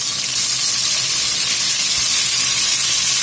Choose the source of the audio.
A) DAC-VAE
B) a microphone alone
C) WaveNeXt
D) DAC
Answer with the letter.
B